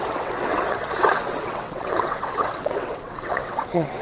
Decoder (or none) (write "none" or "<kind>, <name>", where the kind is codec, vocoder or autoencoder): vocoder, WaveNeXt